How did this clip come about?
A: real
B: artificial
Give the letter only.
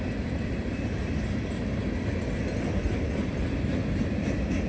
A